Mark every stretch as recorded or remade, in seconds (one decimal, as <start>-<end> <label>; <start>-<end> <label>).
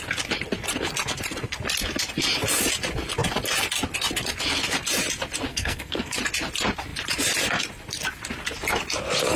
0.0-5.5 recorded; 5.5-6.2 remade; 6.2-9.4 recorded